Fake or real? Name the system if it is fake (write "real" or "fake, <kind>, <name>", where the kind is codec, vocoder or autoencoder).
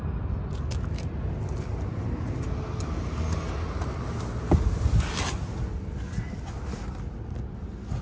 real